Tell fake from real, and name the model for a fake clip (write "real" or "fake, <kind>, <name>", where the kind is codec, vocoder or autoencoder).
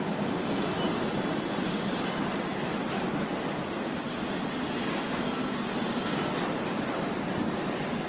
real